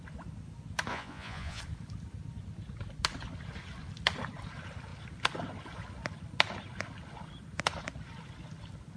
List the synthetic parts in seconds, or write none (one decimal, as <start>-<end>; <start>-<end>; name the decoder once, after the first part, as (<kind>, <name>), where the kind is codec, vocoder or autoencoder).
0.9-1.6 (vocoder, Vocos)